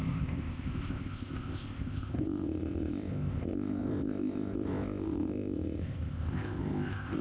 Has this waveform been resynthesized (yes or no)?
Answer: yes